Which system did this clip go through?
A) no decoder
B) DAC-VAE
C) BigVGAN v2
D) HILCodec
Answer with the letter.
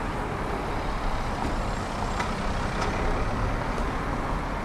A